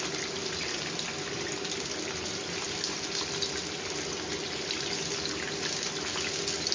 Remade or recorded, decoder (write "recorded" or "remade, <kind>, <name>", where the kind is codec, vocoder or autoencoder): recorded